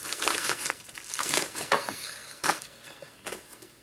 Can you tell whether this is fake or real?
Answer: fake